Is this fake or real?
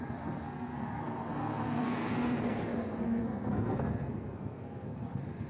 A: fake